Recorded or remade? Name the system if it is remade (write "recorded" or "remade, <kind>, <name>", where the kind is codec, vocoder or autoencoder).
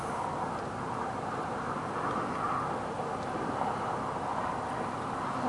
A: recorded